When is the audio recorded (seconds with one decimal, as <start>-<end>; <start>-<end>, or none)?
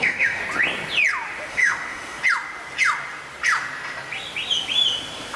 0.4-1.5; 2.2-5.4